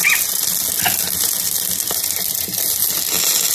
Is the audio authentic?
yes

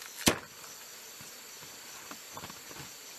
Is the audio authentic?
yes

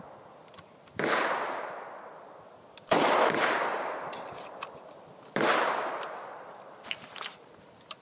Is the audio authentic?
yes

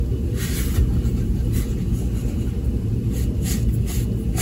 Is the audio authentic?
yes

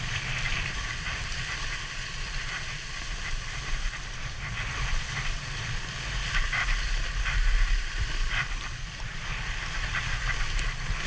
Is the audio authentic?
no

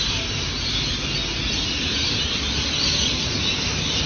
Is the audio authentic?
yes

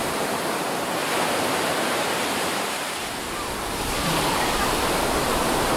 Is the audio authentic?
no